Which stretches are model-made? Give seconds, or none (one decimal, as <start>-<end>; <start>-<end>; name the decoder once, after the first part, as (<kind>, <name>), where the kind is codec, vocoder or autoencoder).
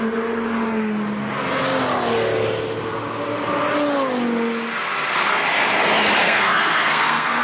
6.2-7.4 (codec, SNAC)